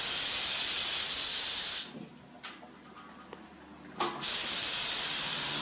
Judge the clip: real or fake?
real